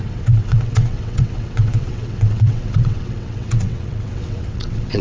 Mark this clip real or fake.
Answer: fake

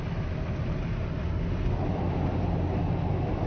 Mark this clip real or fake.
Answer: real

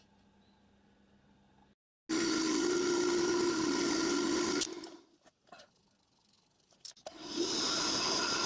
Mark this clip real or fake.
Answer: real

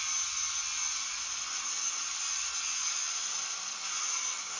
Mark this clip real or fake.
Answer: real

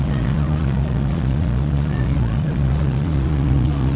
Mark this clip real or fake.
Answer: fake